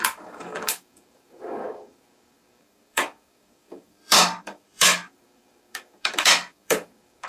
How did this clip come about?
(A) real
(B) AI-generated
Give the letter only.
B